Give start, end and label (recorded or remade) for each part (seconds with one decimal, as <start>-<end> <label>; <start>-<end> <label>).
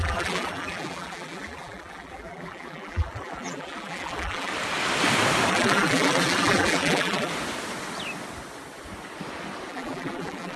0.0-4.5 remade; 4.5-5.5 recorded; 5.5-7.3 remade; 7.3-9.7 recorded; 9.7-10.6 remade